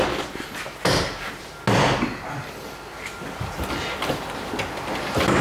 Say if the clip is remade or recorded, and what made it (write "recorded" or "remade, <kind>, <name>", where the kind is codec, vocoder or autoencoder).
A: recorded